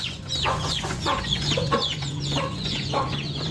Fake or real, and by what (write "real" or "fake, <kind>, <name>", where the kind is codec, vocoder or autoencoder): fake, vocoder, Vocos